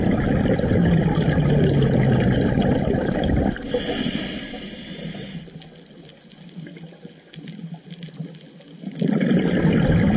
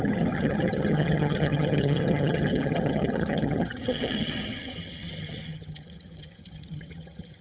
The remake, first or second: second